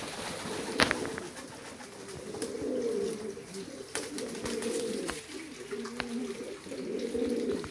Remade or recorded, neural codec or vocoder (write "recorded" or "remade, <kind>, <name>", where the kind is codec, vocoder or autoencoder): recorded